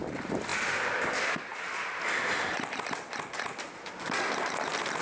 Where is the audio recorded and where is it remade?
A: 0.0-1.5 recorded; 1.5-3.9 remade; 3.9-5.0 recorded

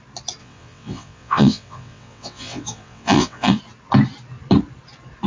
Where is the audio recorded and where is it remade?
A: 0.0-0.4 recorded; 0.4-3.6 remade; 3.6-5.3 recorded

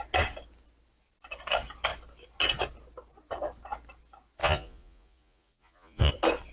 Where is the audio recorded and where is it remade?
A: 0.0-4.4 recorded; 4.4-6.1 remade; 6.1-6.5 recorded

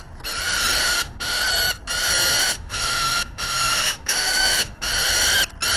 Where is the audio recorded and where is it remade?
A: 0.0-0.8 recorded; 0.8-1.4 remade; 1.4-2.4 recorded; 2.4-4.9 remade; 4.9-5.8 recorded

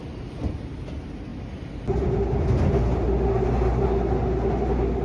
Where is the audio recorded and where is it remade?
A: 0.0-5.0 recorded

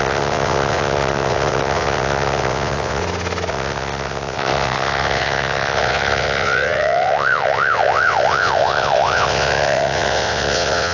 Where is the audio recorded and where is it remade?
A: 0.0-3.0 remade; 3.0-3.5 recorded; 3.5-10.9 remade

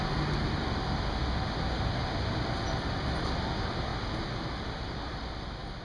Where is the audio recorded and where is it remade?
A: 0.0-3.9 recorded; 3.9-5.3 remade; 5.3-5.8 recorded

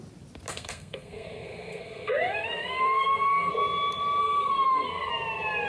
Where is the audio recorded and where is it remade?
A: 0.0-0.5 recorded; 0.5-3.5 remade; 3.5-4.2 recorded; 4.2-5.1 remade; 5.1-5.7 recorded